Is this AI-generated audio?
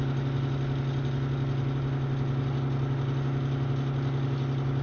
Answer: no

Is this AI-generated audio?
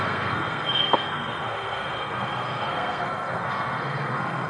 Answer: yes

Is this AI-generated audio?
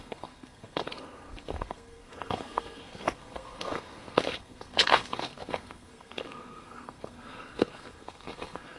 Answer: yes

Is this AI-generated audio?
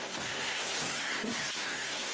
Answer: yes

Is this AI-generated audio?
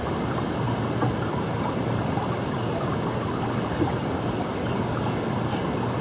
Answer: no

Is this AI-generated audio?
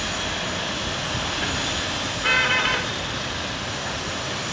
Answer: no